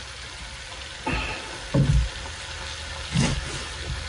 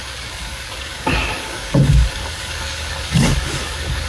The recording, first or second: first